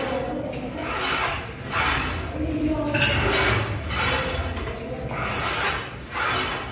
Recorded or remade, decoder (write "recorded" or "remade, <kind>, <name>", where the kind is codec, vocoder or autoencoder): recorded